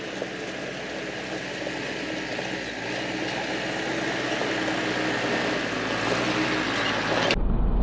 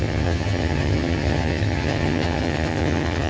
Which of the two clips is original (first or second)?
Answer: first